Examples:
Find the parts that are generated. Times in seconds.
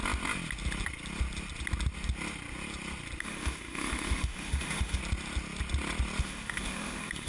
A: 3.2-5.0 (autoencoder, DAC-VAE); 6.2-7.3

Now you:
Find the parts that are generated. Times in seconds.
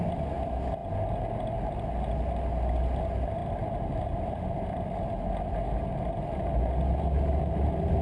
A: none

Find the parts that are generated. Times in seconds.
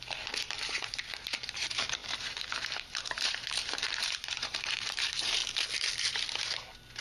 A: 0.0-5.4 (vocoder, BigVGAN v2)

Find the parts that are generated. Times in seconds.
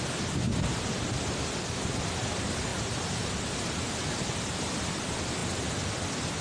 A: none